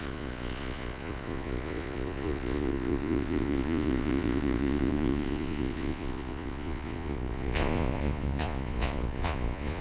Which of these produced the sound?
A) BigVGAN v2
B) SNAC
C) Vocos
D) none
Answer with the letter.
C